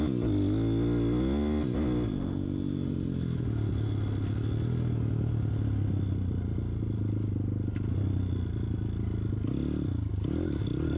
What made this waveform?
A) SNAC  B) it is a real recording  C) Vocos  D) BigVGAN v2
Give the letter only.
B